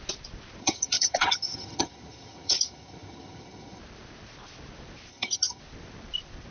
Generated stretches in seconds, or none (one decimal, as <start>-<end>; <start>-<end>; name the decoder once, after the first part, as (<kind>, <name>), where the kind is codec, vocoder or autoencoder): 0.6-3.8 (vocoder, HiFi-GAN); 5.1-5.6